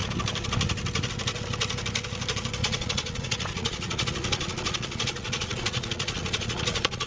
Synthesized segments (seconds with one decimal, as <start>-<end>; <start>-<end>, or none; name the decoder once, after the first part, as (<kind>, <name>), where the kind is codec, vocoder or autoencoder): 2.6-7.1 (vocoder, Vocos)

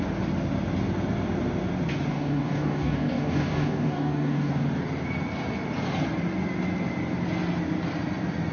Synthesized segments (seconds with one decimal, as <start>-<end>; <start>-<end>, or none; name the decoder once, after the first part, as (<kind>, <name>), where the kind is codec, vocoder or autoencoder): 2.1-4.5 (codec, DAC)

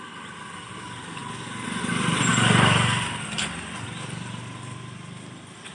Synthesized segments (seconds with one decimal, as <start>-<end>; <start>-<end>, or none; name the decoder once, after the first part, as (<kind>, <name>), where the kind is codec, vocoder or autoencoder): none

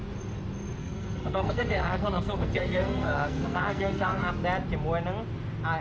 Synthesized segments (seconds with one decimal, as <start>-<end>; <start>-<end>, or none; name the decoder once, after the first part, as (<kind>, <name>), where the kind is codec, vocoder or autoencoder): 0.8-4.3 (codec, SNAC)

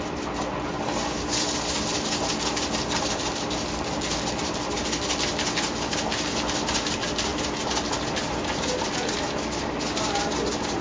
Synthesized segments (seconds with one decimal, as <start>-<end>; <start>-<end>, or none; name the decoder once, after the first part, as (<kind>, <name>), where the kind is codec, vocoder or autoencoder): none

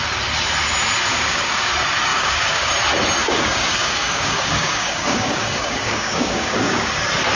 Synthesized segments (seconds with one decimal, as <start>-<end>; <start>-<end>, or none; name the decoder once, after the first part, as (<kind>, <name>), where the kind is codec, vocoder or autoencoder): 1.1-1.7 (codec, DAC); 2.1-2.7; 3.2-7.0

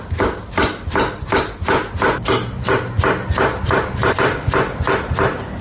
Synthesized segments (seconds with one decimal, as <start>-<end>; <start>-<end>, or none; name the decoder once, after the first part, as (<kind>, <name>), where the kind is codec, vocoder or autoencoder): 4.0-4.5 (vocoder, BigVGAN v2)

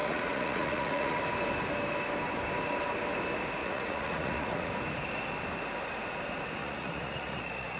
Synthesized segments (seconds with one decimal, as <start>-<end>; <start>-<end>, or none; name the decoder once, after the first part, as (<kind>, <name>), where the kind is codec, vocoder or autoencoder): 0.0-1.2 (vocoder, Vocos); 3.6-4.7; 6.6-7.8